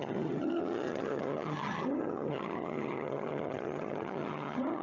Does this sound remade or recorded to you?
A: remade